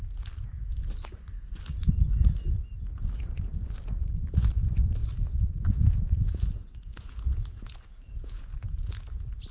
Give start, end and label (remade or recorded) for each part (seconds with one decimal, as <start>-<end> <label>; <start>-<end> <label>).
0.0-5.0 recorded; 5.0-8.9 remade; 8.9-9.5 recorded